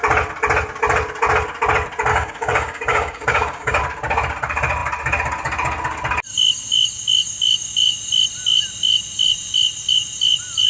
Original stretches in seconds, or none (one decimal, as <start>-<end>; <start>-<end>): 0.0-2.1; 3.8-10.7